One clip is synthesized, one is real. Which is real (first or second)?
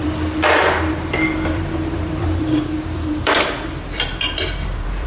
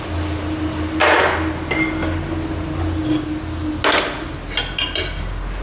second